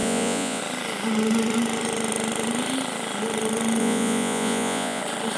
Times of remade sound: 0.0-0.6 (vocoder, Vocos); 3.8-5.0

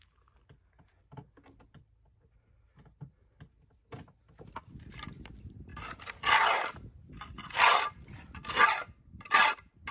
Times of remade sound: none

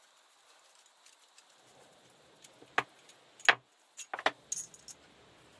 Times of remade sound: none

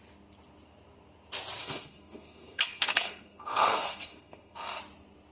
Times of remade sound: 1.6-4.8 (codec, SNAC)

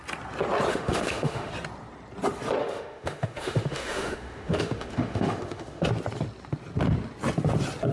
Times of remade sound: 0.7-1.5 (autoencoder, DAC-VAE); 2.6-5.9

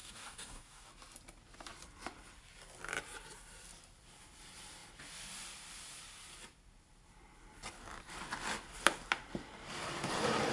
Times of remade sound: 0.0-0.9 (codec, DAC)

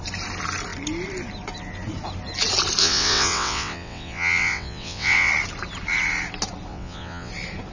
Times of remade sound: 2.8-5.3 (vocoder, WaveNeXt); 6.7-7.3

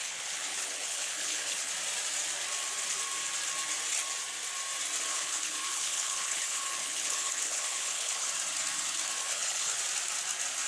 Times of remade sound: 0.0-1.7 (codec, HILCodec); 5.1-8.3; 9.2-9.8